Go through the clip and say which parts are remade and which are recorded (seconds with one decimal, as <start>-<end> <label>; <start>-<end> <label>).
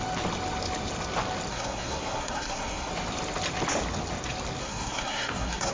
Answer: 0.0-1.5 recorded; 1.5-2.9 remade; 2.9-4.6 recorded; 4.6-5.7 remade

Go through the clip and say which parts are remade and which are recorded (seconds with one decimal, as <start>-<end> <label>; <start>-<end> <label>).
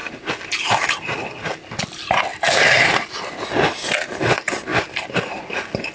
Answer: 0.0-2.3 recorded; 2.3-3.1 remade; 3.1-4.7 recorded; 4.7-5.3 remade; 5.3-5.9 recorded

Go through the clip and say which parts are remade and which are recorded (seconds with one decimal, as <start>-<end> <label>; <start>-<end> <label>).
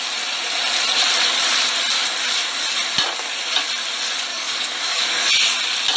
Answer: 0.0-4.3 recorded; 4.3-5.3 remade; 5.3-6.0 recorded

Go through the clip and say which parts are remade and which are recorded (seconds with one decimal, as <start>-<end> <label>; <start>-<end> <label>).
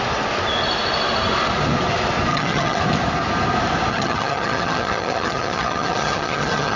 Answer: 0.0-2.3 recorded; 2.3-2.8 remade; 2.8-3.9 recorded; 3.9-6.8 remade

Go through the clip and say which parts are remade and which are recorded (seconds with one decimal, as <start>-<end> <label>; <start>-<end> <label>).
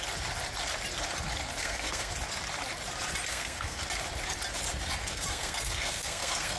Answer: 0.0-1.6 recorded; 1.6-2.1 remade; 2.1-3.3 recorded; 3.3-3.8 remade; 3.8-5.0 recorded; 5.0-6.6 remade